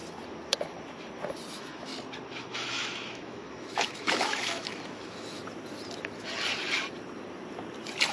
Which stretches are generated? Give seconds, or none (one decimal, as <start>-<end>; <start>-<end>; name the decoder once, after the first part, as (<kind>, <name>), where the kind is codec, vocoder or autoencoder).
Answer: 1.5-1.9 (autoencoder, DAC-VAE); 2.4-5.4